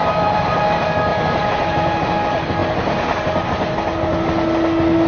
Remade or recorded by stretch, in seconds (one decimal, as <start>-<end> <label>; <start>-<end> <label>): 0.0-0.6 remade; 0.6-1.1 recorded; 1.1-2.1 remade; 2.1-5.1 recorded